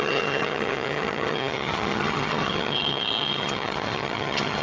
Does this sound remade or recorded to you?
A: remade